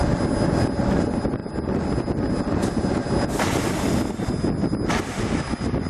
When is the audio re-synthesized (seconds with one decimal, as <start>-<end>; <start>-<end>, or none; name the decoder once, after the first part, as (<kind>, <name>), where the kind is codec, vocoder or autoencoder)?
none